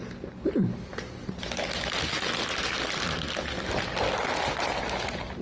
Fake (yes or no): no